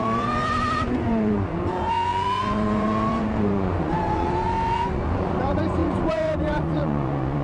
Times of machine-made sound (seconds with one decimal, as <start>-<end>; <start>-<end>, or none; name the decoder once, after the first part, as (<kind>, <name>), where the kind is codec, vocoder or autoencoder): 0.0-7.4 (vocoder, Vocos)